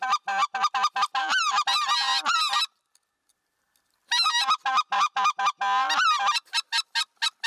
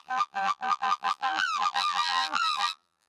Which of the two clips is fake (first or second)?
second